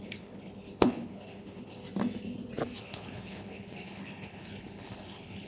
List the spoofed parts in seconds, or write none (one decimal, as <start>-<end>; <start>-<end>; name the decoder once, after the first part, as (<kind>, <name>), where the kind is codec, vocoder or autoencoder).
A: 0.0-1.8 (codec, HILCodec); 2.8-5.5